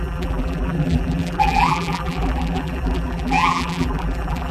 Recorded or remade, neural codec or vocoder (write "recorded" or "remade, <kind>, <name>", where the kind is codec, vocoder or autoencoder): remade, vocoder, BigVGAN v2